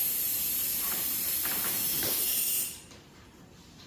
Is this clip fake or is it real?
fake